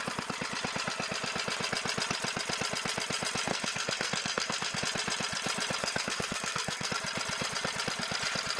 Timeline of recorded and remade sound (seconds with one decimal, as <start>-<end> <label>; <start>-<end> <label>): 0.0-3.5 recorded; 3.5-4.8 remade; 4.8-5.8 recorded; 5.8-6.9 remade; 6.9-8.6 recorded